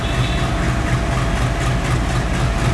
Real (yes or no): yes